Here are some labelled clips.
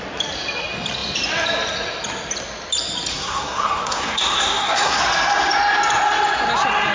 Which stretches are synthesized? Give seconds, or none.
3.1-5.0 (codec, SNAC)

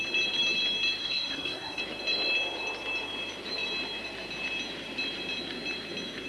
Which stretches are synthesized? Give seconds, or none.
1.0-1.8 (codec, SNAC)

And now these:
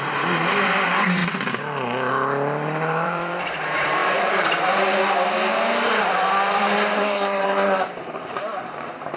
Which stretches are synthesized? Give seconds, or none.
0.0-1.2 (vocoder, BigVGAN v2); 2.1-9.2

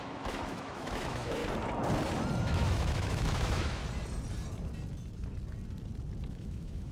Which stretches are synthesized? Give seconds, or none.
0.0-1.4 (autoencoder, DAC-VAE); 2.4-3.8; 6.3-6.9

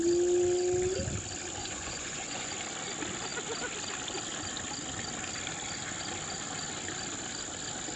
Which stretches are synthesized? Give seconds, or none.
1.6-2.5 (vocoder, Vocos)

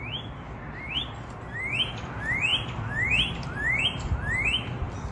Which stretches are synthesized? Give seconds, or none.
none

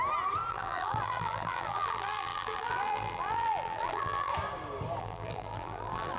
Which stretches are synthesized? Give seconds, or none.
0.5-4.3 (vocoder, BigVGAN v2); 5.0-6.2